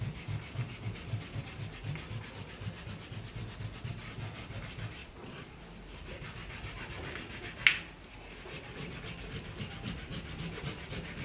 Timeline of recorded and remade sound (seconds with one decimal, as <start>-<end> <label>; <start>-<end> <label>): 0.0-5.0 recorded; 5.0-5.6 remade; 5.6-11.2 recorded